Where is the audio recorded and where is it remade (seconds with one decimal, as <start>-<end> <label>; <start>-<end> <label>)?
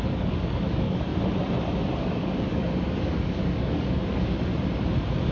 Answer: 0.0-1.1 remade; 1.1-2.0 recorded; 2.0-4.5 remade; 4.5-5.3 recorded